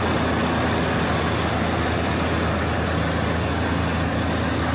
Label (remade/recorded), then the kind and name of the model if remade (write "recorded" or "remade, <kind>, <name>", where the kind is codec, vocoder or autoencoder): recorded